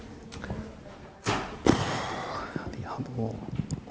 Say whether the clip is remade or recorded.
recorded